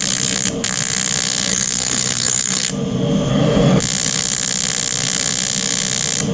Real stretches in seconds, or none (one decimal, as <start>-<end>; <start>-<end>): 0.0-1.5; 2.7-3.3; 3.8-6.3